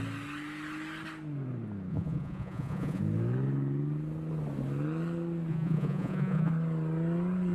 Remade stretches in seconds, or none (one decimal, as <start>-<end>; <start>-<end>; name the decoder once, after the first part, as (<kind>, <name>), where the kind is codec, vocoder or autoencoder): 1.9-3.0 (vocoder, Vocos); 5.5-6.5

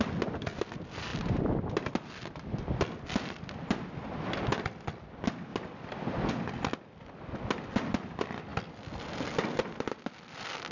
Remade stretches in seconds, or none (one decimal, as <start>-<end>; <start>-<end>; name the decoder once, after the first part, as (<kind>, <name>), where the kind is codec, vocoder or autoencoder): none

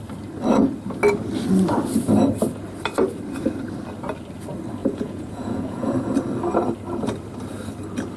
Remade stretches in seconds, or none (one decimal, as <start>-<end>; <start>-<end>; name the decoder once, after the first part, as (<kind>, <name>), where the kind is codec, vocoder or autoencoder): 4.8-6.1 (vocoder, Vocos)

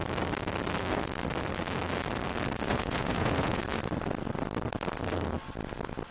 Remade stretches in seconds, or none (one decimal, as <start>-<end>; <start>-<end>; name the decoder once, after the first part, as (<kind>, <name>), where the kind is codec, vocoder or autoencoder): 2.7-3.6 (vocoder, Vocos)

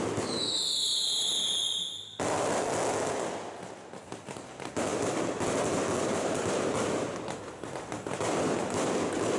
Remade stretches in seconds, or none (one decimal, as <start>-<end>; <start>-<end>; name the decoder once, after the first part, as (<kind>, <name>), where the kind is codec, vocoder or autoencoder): none

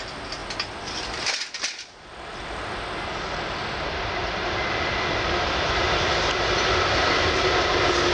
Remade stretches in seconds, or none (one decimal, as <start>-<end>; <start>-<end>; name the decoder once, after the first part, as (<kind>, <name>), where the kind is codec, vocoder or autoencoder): none

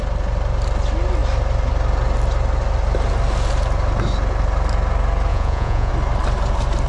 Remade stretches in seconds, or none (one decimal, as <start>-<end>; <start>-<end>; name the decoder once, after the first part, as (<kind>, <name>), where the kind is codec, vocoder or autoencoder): 5.3-5.9 (vocoder, Vocos)

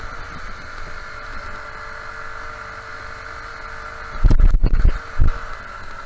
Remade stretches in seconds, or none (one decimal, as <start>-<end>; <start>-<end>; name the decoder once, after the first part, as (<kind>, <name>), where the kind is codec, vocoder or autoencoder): none